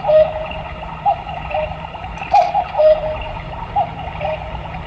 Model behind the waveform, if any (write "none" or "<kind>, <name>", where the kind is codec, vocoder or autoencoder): vocoder, BigVGAN v2